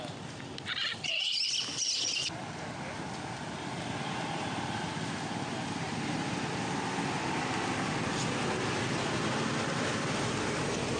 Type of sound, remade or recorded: recorded